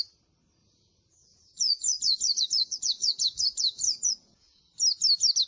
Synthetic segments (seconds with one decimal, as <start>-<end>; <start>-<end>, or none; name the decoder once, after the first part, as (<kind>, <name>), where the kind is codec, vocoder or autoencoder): 1.3-4.6 (vocoder, Vocos)